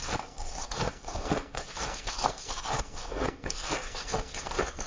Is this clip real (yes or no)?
no